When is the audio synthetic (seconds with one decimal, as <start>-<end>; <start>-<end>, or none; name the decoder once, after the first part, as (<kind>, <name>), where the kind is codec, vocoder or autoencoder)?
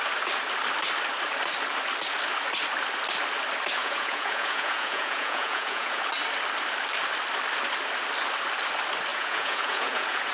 3.8-6.0 (vocoder, Vocos); 9.1-10.3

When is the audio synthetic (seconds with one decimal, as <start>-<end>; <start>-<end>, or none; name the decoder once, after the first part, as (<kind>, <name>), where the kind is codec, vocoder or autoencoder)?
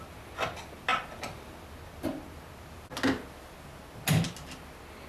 none